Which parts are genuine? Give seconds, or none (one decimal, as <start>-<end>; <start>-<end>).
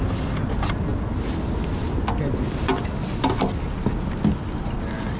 0.0-5.2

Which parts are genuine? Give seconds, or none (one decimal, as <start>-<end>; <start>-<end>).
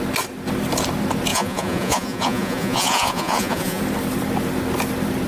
0.0-1.3; 3.8-5.3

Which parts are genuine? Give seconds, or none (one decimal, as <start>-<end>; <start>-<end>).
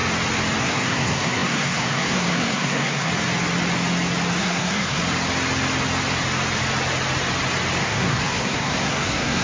0.0-0.6; 3.1-4.4; 5.0-7.8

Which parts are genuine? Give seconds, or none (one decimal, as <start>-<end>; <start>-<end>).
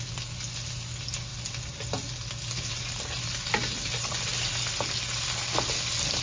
0.0-6.2